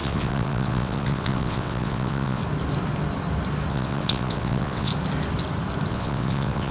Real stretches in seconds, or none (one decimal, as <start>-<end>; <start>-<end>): 2.4-3.7; 4.9-5.9